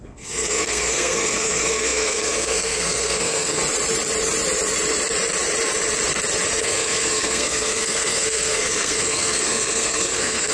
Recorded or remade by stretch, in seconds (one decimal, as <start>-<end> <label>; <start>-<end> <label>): 0.0-3.6 remade; 3.6-6.6 recorded; 6.6-10.5 remade